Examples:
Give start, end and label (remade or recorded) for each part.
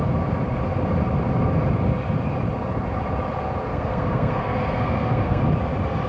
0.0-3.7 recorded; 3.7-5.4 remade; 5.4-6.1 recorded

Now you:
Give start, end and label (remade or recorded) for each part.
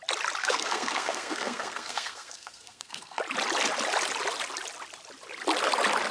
0.0-0.4 recorded; 0.4-3.2 remade; 3.2-6.1 recorded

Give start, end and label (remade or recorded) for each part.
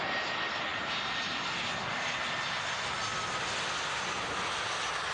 0.0-5.1 recorded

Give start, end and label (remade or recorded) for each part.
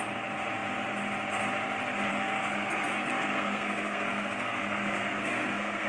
0.0-2.1 recorded; 2.1-5.9 remade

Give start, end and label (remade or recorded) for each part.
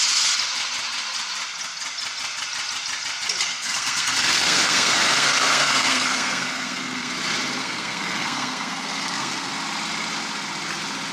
0.0-3.5 recorded; 3.5-7.1 remade; 7.1-7.6 recorded; 7.6-9.5 remade; 9.5-11.1 recorded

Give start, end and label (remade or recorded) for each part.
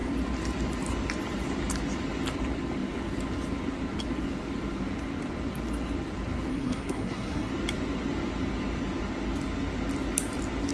0.0-6.5 recorded; 6.5-7.5 remade; 7.5-10.7 recorded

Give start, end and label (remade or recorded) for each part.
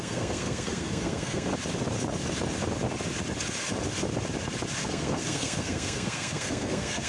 0.0-1.5 remade; 1.5-4.9 recorded; 4.9-7.1 remade